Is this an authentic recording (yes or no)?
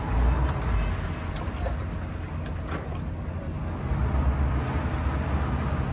yes